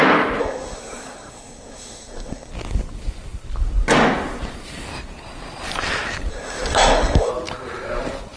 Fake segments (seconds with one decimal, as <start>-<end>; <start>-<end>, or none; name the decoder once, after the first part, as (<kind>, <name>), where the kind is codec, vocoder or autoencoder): 0.4-2.5 (codec, SNAC); 6.3-7.3